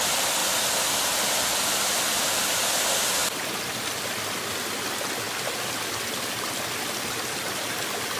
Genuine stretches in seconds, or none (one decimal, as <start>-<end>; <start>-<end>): 0.0-8.2